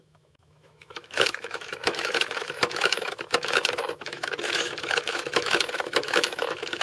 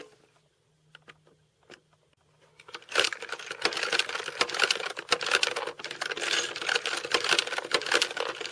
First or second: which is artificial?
first